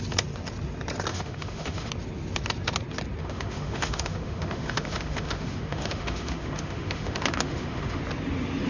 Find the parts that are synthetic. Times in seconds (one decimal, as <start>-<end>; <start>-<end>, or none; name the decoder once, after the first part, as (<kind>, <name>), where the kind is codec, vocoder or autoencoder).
1.1-1.9 (autoencoder, DAC-VAE); 3.2-8.0